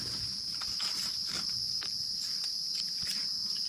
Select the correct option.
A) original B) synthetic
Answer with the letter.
B